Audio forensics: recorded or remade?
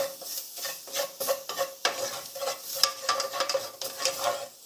recorded